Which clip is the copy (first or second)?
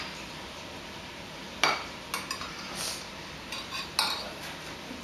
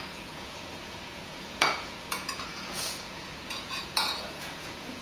second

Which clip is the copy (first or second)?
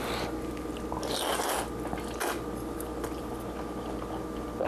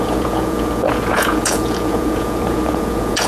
second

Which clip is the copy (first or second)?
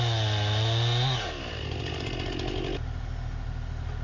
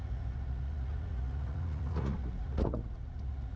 second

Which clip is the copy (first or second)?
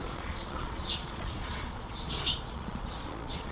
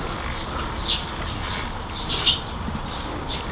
first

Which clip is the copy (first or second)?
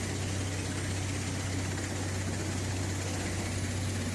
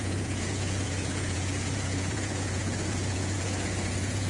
second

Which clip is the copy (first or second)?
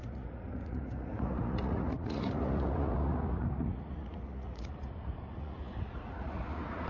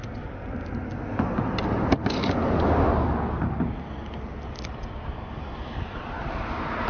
first